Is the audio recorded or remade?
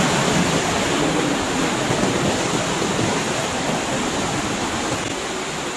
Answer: recorded